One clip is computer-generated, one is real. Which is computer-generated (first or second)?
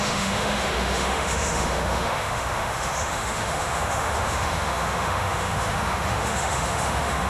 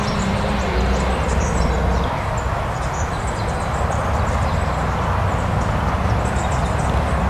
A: first